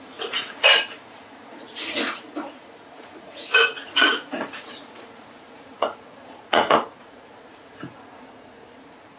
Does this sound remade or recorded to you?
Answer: remade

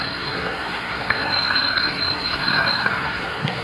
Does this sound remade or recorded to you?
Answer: remade